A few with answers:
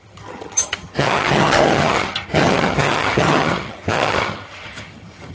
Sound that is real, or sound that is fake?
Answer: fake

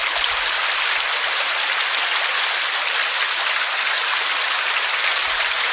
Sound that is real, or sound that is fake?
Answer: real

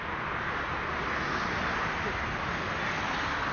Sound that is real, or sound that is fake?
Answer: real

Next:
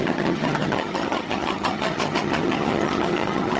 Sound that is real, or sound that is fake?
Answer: fake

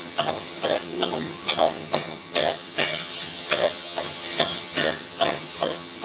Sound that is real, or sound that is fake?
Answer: fake